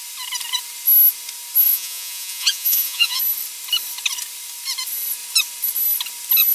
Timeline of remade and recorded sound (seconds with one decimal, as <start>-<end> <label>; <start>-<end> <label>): 0.0-1.6 recorded; 1.6-3.2 remade; 3.2-6.5 recorded